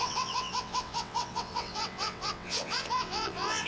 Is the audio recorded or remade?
remade